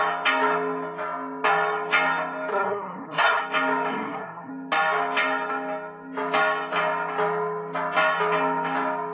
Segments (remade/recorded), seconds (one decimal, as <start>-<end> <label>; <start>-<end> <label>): 0.0-2.5 recorded; 2.5-3.4 remade; 3.4-3.9 recorded; 3.9-4.5 remade; 4.5-9.1 recorded